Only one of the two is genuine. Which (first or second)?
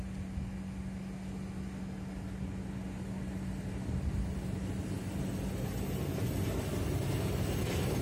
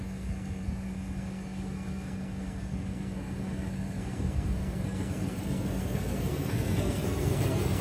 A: first